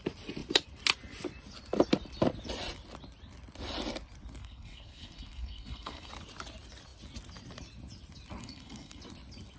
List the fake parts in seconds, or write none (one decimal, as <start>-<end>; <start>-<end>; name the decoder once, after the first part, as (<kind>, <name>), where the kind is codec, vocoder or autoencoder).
4.4-6.1 (codec, SNAC); 8.4-9.0